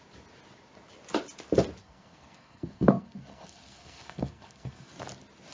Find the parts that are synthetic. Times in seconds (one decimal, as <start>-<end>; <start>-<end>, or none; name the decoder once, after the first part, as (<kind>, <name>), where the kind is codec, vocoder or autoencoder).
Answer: 1.8-4.9 (codec, SNAC)